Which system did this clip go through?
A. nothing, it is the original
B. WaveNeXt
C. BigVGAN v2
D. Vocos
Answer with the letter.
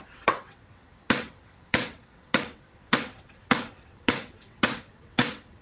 B